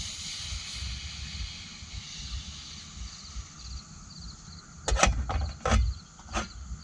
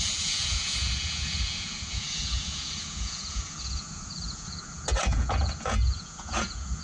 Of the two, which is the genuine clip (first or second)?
first